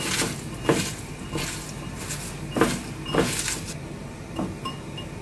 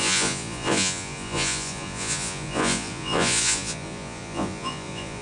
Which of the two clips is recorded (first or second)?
first